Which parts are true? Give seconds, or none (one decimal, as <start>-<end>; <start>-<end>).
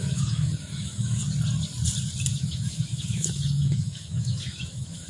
1.2-2.3